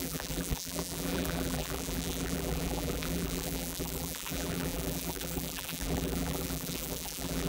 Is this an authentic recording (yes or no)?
no